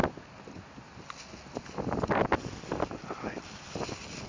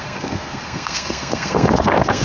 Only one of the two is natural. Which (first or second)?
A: first